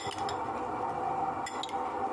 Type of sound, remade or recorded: recorded